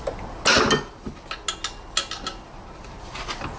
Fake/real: real